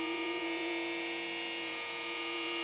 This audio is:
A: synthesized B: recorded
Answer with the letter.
A